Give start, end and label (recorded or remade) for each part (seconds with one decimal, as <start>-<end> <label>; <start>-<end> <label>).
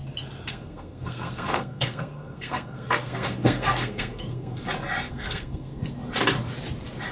0.0-0.5 recorded; 0.5-4.6 remade; 4.6-5.1 recorded; 5.1-5.8 remade; 5.8-7.1 recorded